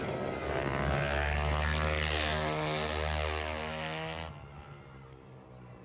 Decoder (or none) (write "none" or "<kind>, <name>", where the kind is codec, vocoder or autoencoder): none